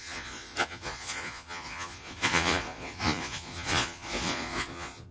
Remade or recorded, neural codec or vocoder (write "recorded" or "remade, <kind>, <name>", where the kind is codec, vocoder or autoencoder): remade, vocoder, Vocos